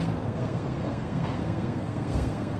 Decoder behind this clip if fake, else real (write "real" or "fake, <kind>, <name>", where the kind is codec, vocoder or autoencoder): fake, codec, SNAC